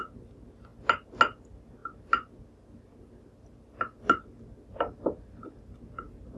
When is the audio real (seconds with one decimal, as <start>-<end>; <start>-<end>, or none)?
0.0-6.4